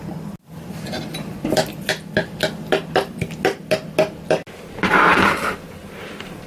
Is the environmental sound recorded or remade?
recorded